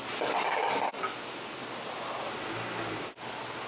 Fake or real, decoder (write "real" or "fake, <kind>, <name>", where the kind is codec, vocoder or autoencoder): real